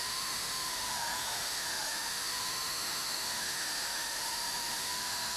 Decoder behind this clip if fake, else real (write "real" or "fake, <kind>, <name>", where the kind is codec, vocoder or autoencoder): fake, autoencoder, DAC-VAE